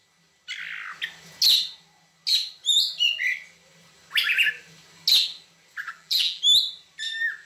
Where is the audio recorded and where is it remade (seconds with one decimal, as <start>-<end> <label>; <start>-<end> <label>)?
0.0-5.8 recorded; 5.8-6.4 remade; 6.4-7.5 recorded